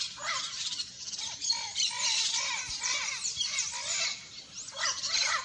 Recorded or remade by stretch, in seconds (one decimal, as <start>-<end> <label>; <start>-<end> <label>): 0.0-5.4 recorded